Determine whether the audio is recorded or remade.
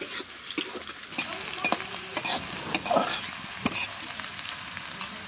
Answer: recorded